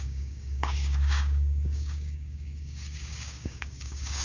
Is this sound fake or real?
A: fake